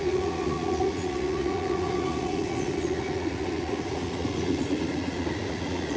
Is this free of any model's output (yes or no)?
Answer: no